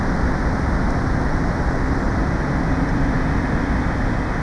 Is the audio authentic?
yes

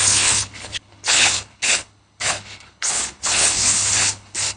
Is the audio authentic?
no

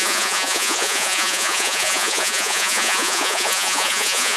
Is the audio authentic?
no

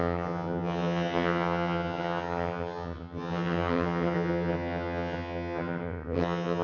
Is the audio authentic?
no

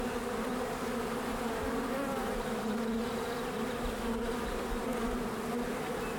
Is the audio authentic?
yes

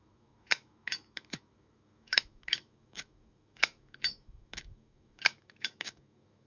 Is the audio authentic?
no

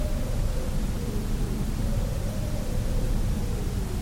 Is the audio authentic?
yes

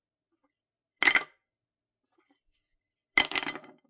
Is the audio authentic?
yes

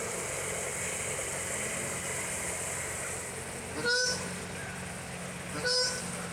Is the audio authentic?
yes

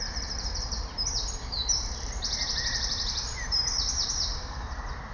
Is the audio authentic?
no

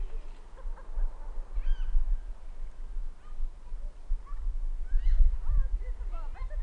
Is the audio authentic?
yes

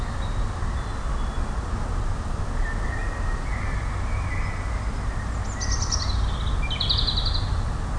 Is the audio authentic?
yes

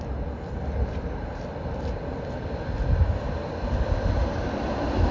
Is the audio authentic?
yes